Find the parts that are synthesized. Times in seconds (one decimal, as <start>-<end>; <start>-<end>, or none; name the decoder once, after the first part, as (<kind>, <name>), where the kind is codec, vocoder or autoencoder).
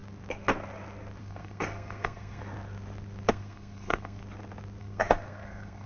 1.2-2.4 (codec, SNAC); 3.3-4.2; 4.8-5.9